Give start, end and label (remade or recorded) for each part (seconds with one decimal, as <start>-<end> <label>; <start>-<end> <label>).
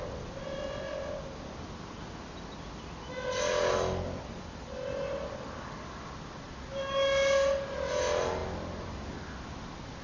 0.0-10.0 recorded